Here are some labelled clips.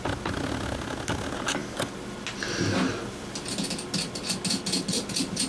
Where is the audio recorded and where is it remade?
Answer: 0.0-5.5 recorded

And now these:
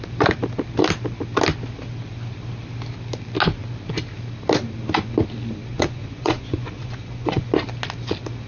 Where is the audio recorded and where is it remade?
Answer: 0.0-5.7 recorded; 5.7-7.5 remade; 7.5-8.5 recorded

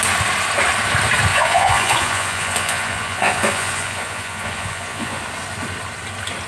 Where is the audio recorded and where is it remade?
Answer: 0.0-1.3 recorded; 1.3-5.2 remade; 5.2-6.5 recorded

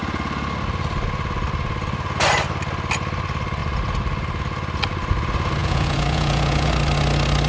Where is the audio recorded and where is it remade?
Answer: 0.0-5.6 recorded; 5.6-6.7 remade; 6.7-7.5 recorded

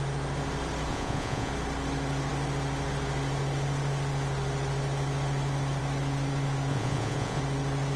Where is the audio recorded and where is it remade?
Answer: 0.0-0.9 recorded; 0.9-1.5 remade; 1.5-6.7 recorded; 6.7-7.4 remade; 7.4-8.0 recorded